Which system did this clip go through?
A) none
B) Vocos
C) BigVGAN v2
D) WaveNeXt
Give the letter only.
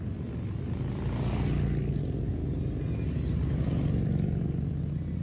A